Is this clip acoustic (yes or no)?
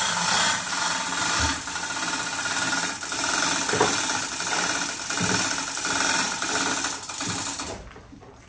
yes